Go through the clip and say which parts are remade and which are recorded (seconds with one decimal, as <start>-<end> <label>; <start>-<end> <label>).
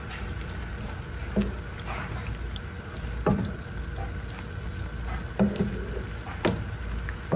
0.0-0.7 remade; 0.7-7.4 recorded